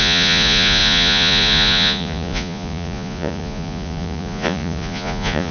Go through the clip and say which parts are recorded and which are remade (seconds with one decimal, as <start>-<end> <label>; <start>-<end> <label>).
0.0-5.5 remade